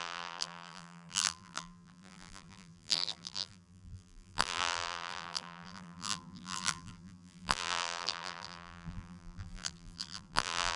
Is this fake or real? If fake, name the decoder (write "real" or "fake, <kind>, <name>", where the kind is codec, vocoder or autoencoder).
fake, vocoder, BigVGAN v2